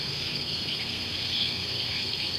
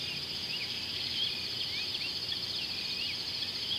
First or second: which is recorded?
second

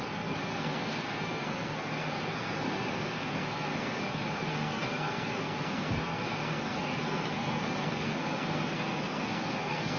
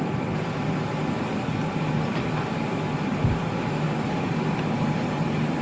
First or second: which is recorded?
second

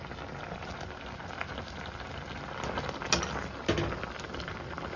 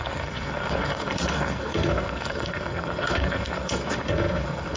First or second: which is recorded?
first